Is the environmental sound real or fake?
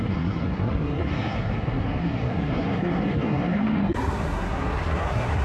fake